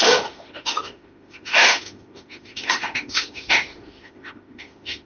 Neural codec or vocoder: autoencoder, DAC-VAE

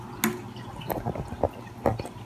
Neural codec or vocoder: none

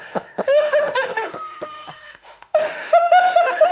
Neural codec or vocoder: autoencoder, DAC-VAE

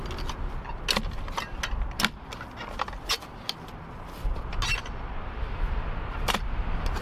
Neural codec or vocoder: none